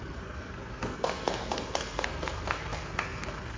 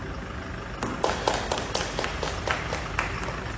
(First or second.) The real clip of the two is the second